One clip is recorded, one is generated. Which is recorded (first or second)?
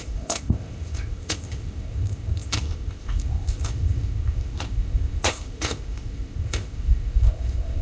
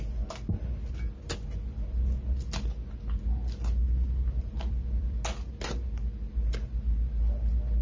second